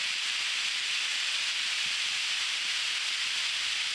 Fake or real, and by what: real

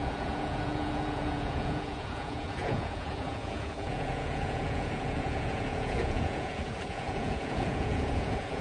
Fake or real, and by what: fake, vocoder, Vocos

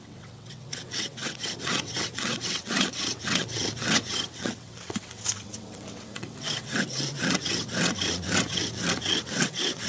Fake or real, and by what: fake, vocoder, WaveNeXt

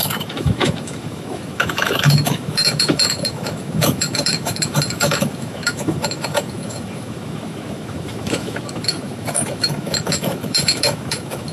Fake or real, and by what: fake, autoencoder, DAC-VAE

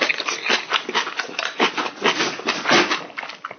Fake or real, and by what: real